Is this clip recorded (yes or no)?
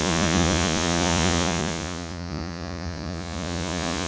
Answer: no